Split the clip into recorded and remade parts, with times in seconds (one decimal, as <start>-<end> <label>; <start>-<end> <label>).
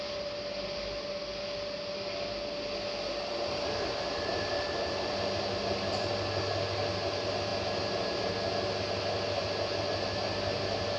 0.0-4.3 recorded; 4.3-6.1 remade; 6.1-11.0 recorded